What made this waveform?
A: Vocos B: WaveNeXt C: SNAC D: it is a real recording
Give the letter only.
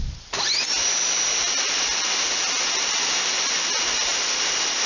D